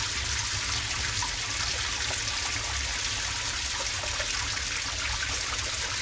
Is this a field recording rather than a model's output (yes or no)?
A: yes